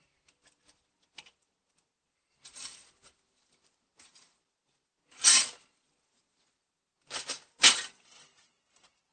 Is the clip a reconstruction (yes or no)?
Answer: no